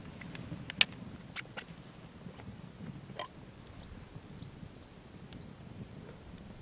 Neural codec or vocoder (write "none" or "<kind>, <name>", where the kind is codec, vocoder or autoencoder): none